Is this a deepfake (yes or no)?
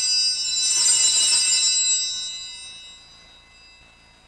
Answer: no